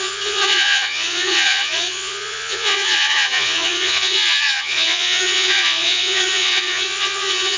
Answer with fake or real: fake